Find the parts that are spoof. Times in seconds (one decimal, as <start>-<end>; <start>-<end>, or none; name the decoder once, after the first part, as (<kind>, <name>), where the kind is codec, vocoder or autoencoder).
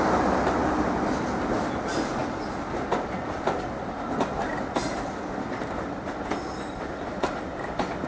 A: none